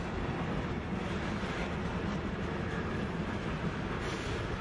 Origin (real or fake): real